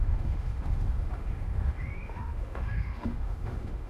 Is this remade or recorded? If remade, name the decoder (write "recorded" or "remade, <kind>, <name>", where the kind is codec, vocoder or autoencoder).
remade, autoencoder, DAC-VAE